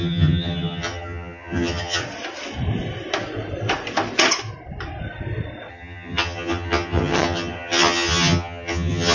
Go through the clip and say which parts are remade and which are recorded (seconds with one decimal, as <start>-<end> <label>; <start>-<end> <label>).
0.0-2.0 remade; 2.0-5.7 recorded; 5.7-9.1 remade